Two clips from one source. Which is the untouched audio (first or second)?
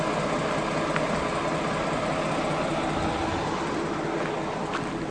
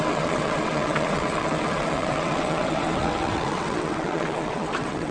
first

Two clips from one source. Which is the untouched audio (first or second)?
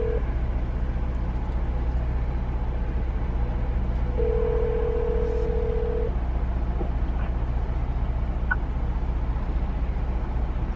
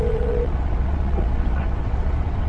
first